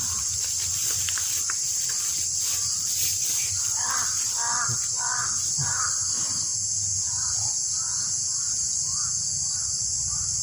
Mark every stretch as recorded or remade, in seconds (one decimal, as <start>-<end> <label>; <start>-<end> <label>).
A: 0.0-6.5 recorded; 6.5-9.4 remade; 9.4-10.4 recorded

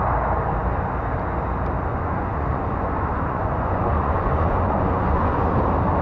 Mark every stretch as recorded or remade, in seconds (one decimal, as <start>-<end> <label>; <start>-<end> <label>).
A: 0.0-1.9 recorded; 1.9-5.5 remade; 5.5-6.0 recorded

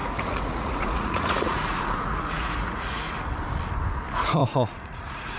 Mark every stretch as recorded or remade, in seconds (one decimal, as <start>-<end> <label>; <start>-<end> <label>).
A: 0.0-3.1 remade; 3.1-4.4 recorded; 4.4-5.4 remade